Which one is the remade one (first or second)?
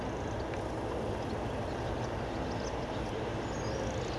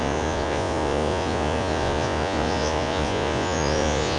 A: second